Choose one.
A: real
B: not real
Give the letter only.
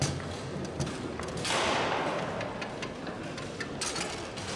A